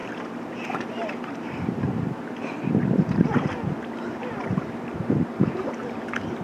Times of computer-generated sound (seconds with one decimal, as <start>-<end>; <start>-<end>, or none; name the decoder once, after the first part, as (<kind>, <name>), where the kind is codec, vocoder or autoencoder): 0.0-3.5 (vocoder, BigVGAN v2); 4.4-5.7